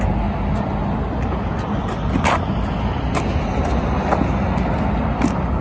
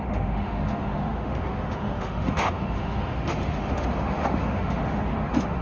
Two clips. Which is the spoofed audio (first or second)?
second